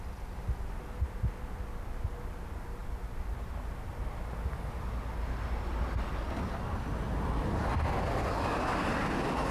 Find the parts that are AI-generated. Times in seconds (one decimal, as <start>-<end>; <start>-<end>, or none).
none